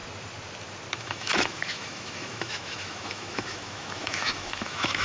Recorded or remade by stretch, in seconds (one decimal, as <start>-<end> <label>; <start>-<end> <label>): 0.0-0.9 recorded; 0.9-5.0 remade